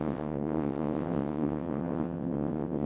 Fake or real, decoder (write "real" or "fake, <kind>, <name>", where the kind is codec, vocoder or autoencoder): fake, vocoder, WaveNeXt